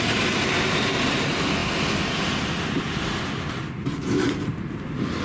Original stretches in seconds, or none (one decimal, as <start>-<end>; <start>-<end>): 0.0-1.6; 4.7-5.2